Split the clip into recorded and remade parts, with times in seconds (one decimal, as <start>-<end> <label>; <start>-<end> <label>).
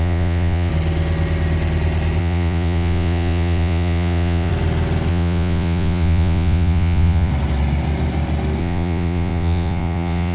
0.0-0.7 remade; 0.7-2.2 recorded; 2.2-4.5 remade; 4.5-5.1 recorded; 5.1-7.3 remade; 7.3-8.6 recorded; 8.6-10.3 remade